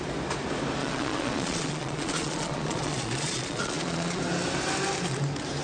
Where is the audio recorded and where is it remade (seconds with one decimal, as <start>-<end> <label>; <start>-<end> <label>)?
0.0-0.8 recorded; 0.8-4.2 remade; 4.2-5.6 recorded